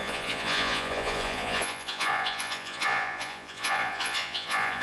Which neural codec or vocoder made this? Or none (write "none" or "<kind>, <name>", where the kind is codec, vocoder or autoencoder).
vocoder, Vocos